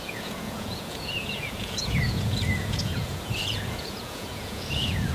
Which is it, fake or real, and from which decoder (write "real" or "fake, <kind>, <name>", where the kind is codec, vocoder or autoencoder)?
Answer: fake, vocoder, Vocos